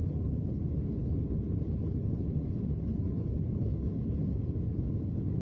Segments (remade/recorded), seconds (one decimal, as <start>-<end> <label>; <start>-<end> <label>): 0.0-5.4 remade